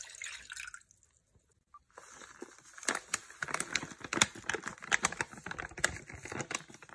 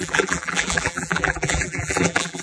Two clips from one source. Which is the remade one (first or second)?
second